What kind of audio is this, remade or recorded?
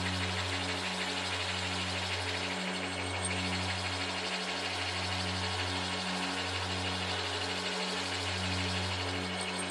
recorded